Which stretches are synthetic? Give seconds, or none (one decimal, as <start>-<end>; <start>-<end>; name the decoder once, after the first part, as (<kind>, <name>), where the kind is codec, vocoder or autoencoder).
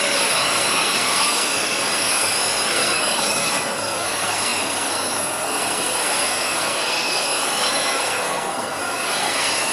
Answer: 0.0-9.7 (codec, SNAC)